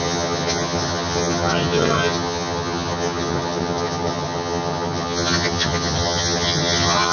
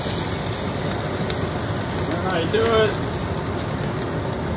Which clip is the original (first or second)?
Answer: second